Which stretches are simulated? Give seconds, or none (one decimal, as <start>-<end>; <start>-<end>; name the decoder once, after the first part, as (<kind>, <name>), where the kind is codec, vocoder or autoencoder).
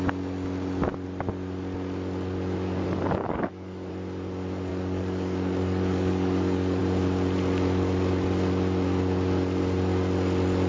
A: 3.2-3.9 (codec, DAC); 4.7-6.8